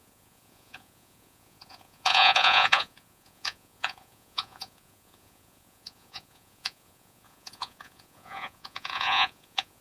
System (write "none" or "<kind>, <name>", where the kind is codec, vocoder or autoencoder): vocoder, Vocos